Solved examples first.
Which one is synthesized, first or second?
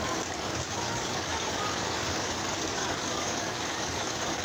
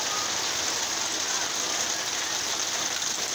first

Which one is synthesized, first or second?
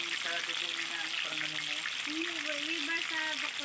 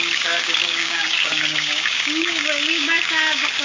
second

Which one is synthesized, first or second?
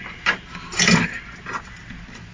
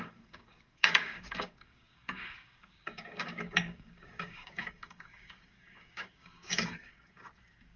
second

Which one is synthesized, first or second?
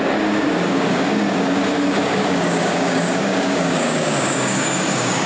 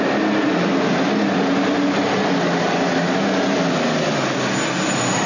first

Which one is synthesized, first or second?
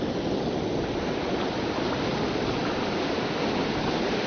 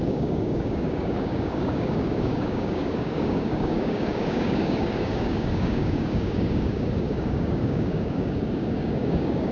second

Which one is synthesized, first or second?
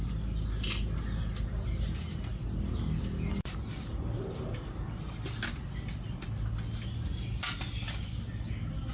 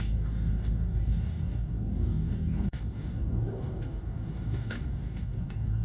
second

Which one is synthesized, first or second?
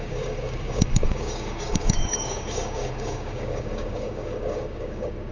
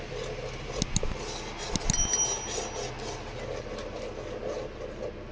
first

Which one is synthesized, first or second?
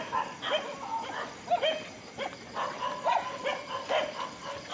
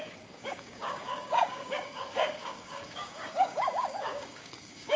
second